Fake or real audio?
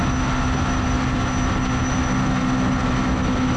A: real